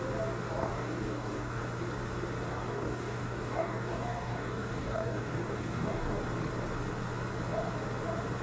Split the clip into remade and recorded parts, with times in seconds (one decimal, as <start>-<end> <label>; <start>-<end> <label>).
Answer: 0.0-0.6 recorded; 0.6-1.6 remade; 1.6-2.5 recorded; 2.5-6.2 remade; 6.2-8.4 recorded